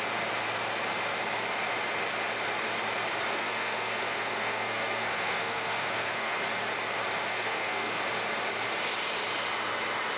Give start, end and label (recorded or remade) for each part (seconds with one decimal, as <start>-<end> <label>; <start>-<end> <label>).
0.0-3.3 recorded; 3.3-6.4 remade; 6.4-7.3 recorded; 7.3-8.0 remade; 8.0-10.2 recorded